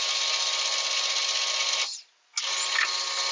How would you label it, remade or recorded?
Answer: recorded